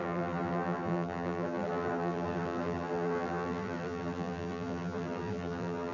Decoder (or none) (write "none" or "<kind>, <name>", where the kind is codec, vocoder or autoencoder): vocoder, BigVGAN v2